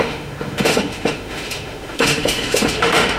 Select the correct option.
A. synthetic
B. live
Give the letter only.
A